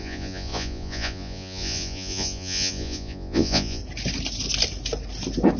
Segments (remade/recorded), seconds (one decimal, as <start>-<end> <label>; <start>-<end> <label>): 0.0-3.8 remade; 3.8-5.6 recorded